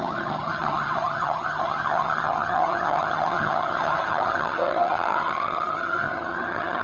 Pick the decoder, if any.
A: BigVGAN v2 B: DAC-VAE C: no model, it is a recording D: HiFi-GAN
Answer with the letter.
D